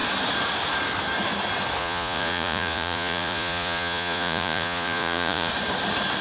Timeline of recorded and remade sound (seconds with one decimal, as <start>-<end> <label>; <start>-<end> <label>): 0.0-1.8 recorded; 1.8-5.5 remade; 5.5-6.2 recorded